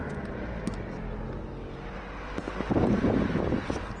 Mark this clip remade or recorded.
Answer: recorded